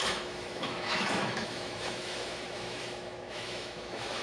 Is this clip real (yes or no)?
no